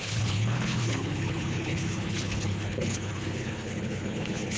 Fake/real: fake